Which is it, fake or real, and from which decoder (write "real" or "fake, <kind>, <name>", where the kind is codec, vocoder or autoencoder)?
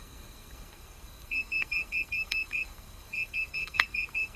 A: fake, codec, SNAC